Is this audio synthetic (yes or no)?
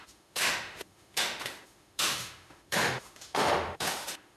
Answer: yes